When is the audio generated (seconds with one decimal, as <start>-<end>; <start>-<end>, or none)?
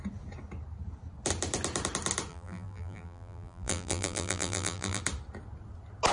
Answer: 2.3-5.0